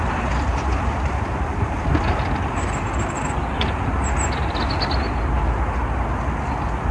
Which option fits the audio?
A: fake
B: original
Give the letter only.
B